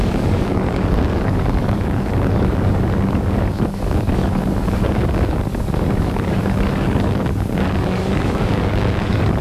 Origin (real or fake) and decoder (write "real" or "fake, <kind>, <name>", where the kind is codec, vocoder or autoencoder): fake, codec, DAC